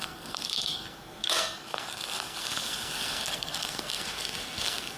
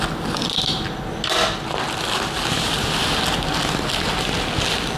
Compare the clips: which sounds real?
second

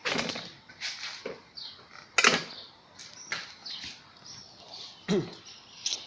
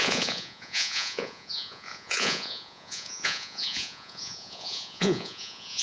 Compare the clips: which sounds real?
first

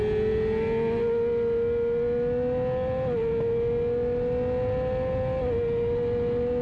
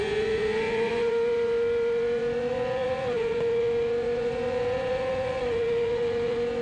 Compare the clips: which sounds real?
first